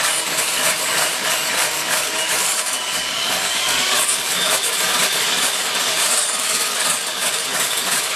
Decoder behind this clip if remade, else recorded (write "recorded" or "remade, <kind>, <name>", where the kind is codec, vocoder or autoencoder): remade, codec, DAC